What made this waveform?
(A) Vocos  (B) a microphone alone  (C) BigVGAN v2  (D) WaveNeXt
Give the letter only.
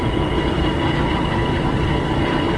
B